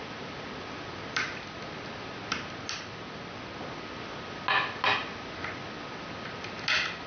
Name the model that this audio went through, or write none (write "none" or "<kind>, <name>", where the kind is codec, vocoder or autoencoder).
none